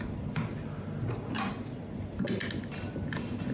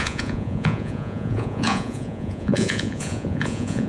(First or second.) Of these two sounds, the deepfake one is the second